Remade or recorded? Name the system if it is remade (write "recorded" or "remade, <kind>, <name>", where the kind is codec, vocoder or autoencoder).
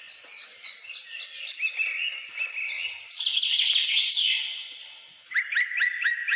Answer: recorded